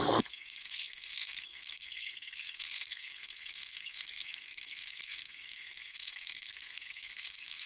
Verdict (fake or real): fake